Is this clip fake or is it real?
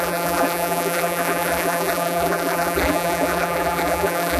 fake